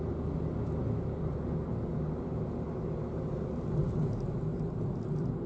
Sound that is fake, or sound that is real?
real